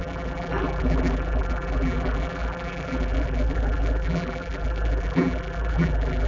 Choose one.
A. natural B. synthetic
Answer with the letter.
B